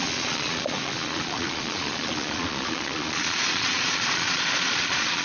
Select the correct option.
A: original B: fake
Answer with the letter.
B